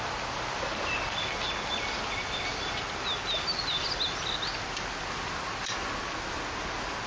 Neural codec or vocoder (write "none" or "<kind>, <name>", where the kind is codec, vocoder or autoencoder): none